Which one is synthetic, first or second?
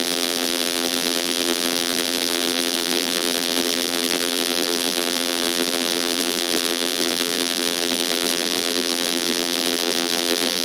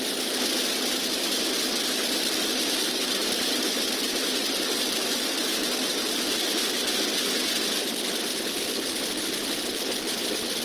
first